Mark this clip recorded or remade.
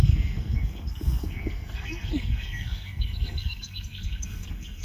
remade